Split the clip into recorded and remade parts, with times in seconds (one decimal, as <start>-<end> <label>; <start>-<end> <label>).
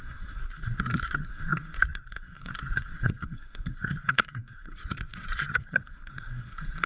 0.0-6.9 remade